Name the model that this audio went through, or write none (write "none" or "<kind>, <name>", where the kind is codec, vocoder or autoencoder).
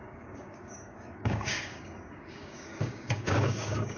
codec, DAC